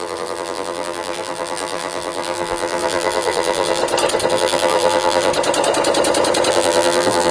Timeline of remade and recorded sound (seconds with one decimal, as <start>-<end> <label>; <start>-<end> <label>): 0.0-3.8 remade; 3.8-4.3 recorded; 4.3-5.3 remade; 5.3-6.5 recorded; 6.5-7.3 remade